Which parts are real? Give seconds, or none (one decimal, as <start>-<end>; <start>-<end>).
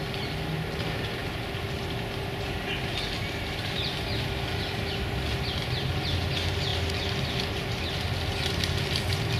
0.0-9.4